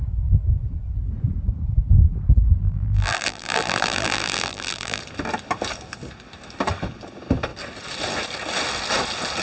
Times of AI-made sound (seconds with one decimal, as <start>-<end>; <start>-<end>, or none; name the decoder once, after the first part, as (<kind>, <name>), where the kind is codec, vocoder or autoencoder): 2.6-5.0 (vocoder, BigVGAN v2)